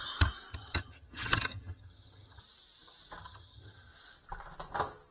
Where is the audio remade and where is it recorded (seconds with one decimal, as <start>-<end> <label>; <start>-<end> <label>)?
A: 0.0-0.5 recorded; 0.5-2.4 remade; 2.4-3.2 recorded; 3.2-3.9 remade; 3.9-5.1 recorded